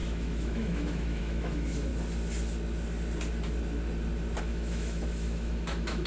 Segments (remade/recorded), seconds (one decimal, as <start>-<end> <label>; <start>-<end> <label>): 0.0-1.9 remade; 1.9-4.4 recorded; 4.4-6.1 remade